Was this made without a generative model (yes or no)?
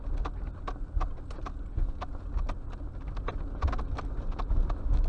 yes